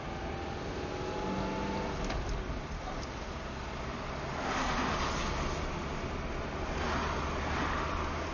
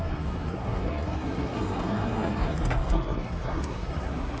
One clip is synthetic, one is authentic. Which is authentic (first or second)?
first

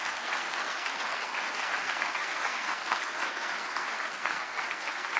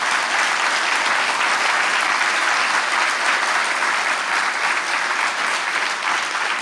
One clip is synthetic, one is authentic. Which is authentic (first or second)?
second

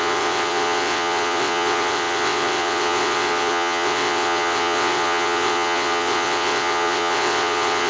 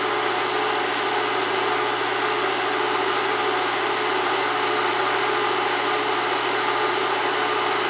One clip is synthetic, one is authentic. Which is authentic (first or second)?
second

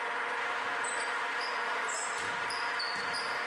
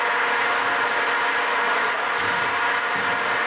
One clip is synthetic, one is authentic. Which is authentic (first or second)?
second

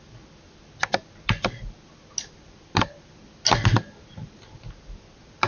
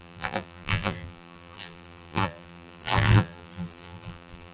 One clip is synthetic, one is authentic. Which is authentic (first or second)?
first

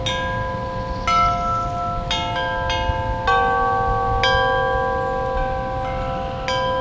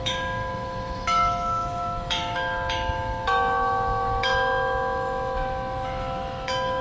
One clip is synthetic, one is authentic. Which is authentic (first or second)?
first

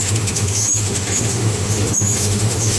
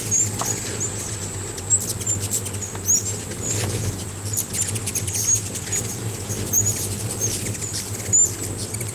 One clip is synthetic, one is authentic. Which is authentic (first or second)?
second